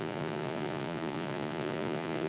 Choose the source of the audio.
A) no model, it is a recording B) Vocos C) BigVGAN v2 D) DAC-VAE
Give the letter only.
B